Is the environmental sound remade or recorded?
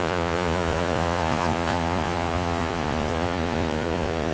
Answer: remade